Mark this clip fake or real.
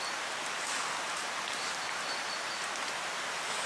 real